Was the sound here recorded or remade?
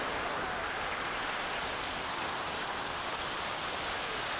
recorded